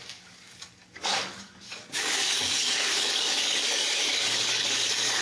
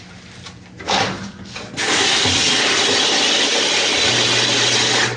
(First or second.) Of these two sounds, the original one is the second